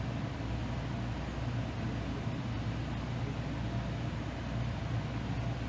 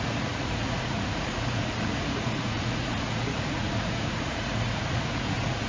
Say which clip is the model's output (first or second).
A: second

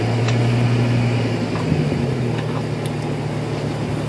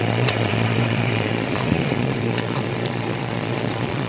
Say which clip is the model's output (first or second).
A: second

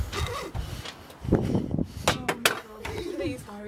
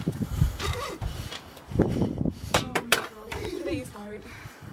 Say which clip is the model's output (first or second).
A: second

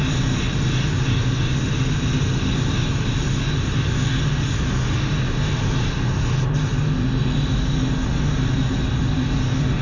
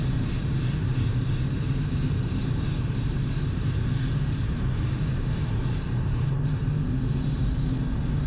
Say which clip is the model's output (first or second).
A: second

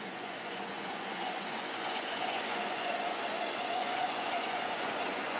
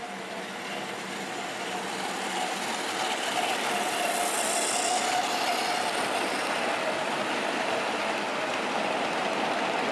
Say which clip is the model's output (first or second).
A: first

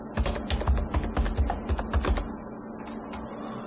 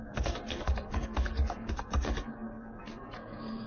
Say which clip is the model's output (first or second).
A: second